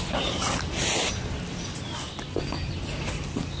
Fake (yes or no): no